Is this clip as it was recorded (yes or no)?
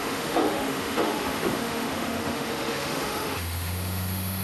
no